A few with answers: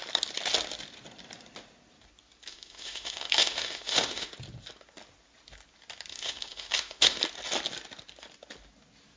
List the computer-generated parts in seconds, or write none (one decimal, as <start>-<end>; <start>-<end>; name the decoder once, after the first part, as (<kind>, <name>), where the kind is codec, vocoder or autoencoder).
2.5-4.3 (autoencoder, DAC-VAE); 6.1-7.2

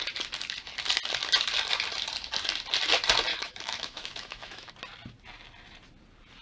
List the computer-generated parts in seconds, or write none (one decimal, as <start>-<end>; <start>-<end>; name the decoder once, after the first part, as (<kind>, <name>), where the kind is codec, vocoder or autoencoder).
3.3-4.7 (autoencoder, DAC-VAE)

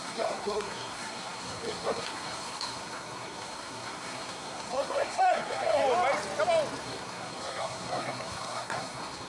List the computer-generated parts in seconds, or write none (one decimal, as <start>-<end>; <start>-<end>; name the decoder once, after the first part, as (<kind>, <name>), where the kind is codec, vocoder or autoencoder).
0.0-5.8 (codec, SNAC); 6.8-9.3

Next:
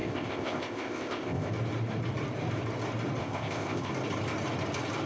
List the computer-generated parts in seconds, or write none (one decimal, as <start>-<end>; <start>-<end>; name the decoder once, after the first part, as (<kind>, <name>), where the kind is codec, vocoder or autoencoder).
0.0-1.5 (codec, ZipCodec); 3.2-3.9

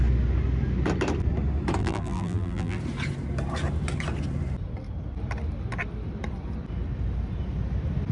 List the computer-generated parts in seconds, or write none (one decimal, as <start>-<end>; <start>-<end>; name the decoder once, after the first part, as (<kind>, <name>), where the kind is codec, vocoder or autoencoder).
1.8-2.8 (vocoder, BigVGAN v2)

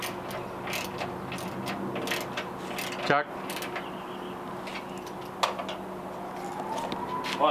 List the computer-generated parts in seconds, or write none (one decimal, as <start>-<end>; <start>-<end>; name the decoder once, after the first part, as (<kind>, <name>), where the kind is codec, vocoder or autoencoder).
none

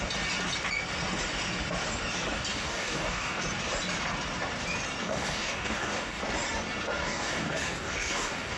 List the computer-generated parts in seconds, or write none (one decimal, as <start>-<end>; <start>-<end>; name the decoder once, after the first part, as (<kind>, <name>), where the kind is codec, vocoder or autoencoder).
2.5-3.4 (codec, DAC); 5.0-6.2; 7.0-8.6

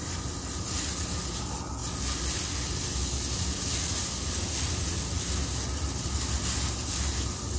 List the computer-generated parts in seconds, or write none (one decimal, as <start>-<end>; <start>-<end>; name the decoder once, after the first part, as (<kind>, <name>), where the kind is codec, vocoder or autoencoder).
none